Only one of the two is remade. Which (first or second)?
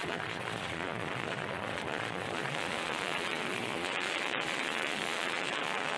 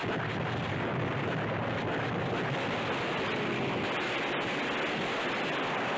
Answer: first